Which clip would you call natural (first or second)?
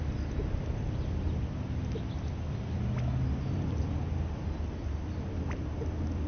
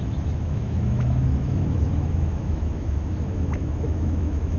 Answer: first